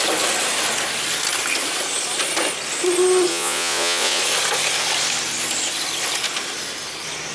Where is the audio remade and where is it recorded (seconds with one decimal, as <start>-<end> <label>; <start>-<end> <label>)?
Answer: 0.0-3.3 recorded; 3.3-4.2 remade; 4.2-7.3 recorded